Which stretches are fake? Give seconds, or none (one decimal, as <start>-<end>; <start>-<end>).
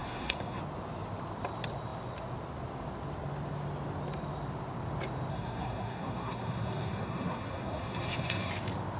0.0-0.6; 5.3-8.5